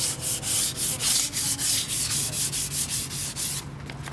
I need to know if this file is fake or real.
real